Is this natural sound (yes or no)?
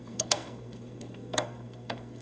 no